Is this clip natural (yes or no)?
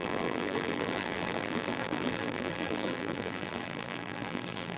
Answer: no